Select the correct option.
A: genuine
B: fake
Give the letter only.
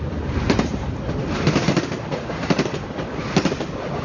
A